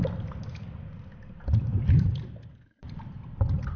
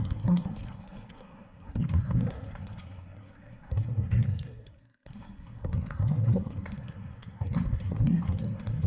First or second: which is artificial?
second